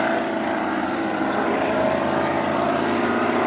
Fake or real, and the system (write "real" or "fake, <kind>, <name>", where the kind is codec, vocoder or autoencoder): real